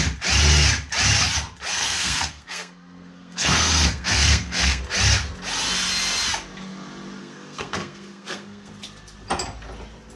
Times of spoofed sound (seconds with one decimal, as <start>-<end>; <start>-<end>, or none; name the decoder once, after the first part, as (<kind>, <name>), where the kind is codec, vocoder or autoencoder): 1.7-4.8 (codec, SNAC); 7.2-8.7